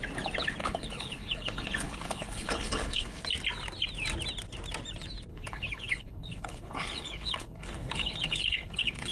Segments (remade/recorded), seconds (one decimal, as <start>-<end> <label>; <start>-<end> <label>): 0.0-0.6 recorded; 0.6-3.2 remade; 3.2-5.3 recorded; 5.3-9.1 remade